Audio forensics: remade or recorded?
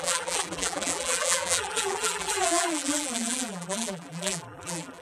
remade